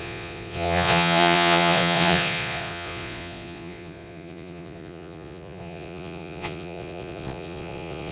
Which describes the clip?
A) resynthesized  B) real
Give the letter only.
A